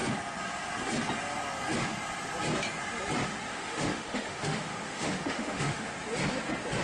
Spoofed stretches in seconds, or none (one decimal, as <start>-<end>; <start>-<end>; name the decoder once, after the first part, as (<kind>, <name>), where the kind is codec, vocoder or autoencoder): 3.5-5.9 (autoencoder, DAC-VAE)

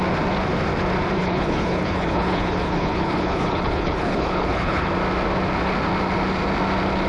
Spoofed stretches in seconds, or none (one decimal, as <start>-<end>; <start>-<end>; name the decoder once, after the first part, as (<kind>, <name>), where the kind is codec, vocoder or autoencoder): 1.2-4.9 (codec, HILCodec)

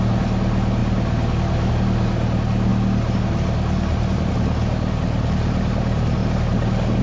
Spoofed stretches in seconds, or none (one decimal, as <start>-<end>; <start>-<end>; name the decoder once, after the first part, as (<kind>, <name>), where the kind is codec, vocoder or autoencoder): none

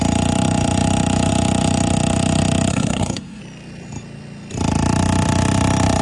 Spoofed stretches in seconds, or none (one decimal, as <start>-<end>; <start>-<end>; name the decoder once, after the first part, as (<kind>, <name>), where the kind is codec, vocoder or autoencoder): 2.7-3.4 (codec, SNAC)

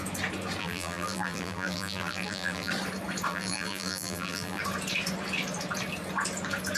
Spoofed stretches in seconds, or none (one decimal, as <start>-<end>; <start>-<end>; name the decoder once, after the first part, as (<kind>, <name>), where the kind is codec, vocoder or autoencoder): 0.6-2.7 (vocoder, BigVGAN v2); 3.3-4.6

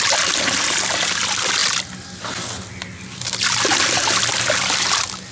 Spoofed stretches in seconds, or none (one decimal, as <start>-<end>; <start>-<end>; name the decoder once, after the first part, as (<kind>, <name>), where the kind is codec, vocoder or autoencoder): none

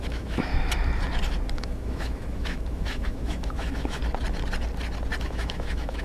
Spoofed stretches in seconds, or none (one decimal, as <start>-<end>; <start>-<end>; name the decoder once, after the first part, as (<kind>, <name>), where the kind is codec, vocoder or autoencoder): 0.0-0.5 (autoencoder, DAC-VAE); 1.5-4.0; 5.2-6.0

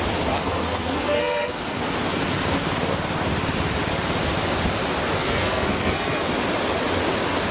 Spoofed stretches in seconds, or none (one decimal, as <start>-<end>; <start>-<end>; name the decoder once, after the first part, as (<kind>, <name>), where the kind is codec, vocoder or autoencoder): 0.4-1.6 (codec, SNAC); 5.2-6.3